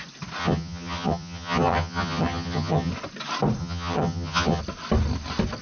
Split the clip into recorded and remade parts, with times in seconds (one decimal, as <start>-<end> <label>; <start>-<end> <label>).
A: 0.0-0.4 recorded; 0.4-2.9 remade; 2.9-3.6 recorded; 3.6-4.6 remade; 4.6-5.6 recorded